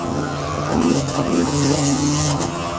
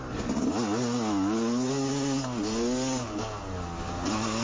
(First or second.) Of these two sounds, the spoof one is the first